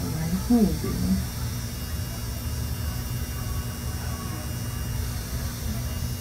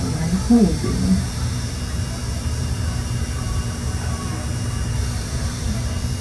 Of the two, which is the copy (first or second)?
second